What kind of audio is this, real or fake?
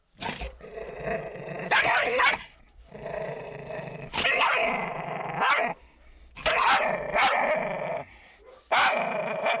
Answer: real